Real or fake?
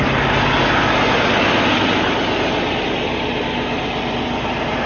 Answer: real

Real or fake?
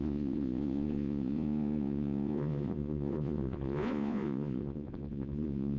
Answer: fake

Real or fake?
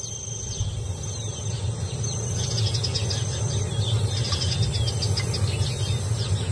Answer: real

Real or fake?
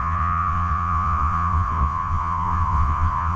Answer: fake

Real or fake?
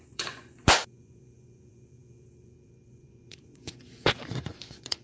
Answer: fake